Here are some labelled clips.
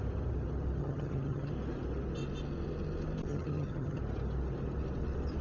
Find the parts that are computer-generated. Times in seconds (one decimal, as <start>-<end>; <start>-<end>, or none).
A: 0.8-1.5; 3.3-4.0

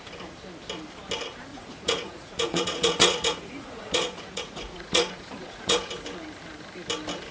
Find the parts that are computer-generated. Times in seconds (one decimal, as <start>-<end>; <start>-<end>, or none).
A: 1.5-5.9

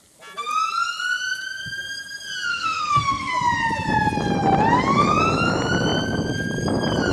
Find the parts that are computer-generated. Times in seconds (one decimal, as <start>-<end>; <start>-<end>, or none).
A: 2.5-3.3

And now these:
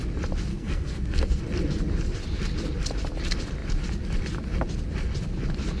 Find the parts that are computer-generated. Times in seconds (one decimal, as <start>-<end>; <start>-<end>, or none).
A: 0.5-1.4

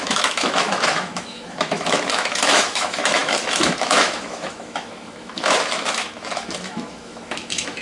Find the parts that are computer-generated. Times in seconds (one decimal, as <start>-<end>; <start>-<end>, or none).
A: 0.0-7.8